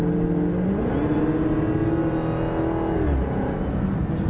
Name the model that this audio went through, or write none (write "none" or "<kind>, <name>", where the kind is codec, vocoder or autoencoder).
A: none